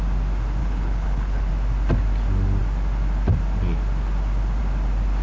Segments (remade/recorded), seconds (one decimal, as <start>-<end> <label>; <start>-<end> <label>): 0.0-0.6 recorded; 0.6-1.5 remade; 1.5-5.2 recorded